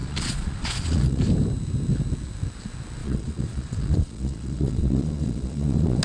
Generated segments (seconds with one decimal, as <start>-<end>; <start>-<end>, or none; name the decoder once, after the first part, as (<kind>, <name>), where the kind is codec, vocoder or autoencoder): 0.0-1.2 (vocoder, Vocos); 3.0-6.0